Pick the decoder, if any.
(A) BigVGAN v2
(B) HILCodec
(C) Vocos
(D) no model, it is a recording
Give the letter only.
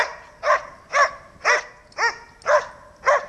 D